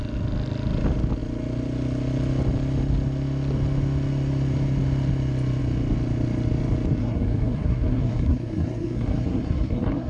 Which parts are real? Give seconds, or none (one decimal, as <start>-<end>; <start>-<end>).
0.0-7.0